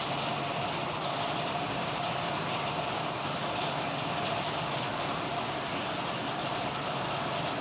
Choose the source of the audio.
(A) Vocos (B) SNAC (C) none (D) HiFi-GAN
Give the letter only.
C